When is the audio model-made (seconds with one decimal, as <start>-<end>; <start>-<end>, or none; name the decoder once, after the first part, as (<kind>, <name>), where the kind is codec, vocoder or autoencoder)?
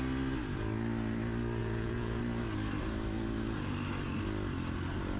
1.6-2.2 (vocoder, Vocos)